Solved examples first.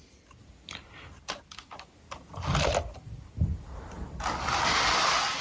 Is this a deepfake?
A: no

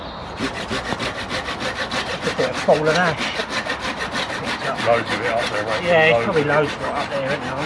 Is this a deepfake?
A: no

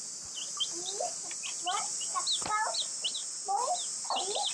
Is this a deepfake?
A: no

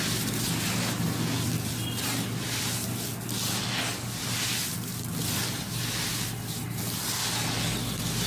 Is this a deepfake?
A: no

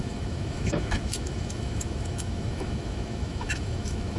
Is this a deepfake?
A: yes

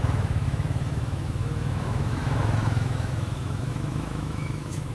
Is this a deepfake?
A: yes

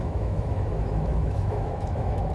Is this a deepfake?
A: yes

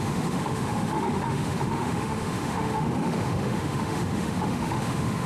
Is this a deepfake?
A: yes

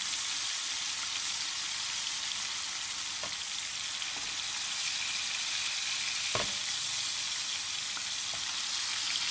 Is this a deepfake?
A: no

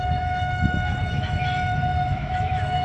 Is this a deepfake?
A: yes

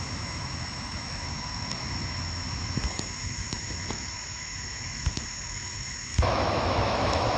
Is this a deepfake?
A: yes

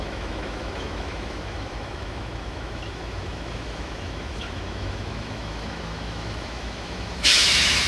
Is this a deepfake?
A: yes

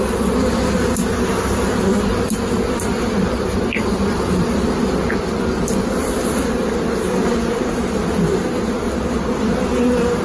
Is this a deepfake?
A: no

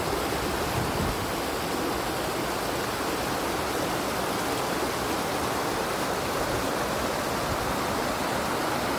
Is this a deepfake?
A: no